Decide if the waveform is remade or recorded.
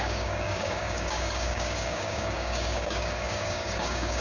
remade